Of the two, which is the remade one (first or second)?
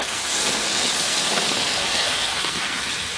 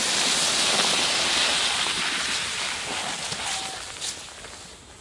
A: first